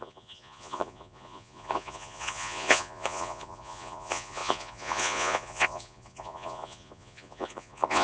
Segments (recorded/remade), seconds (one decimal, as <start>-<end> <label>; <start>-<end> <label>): 0.0-8.0 remade